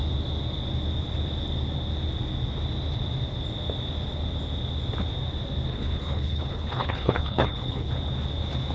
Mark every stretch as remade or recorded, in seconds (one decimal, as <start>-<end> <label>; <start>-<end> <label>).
0.0-5.7 recorded; 5.7-7.9 remade; 7.9-8.7 recorded